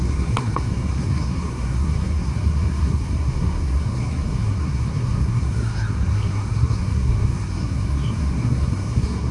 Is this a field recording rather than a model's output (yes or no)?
no